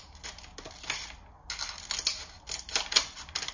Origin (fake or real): real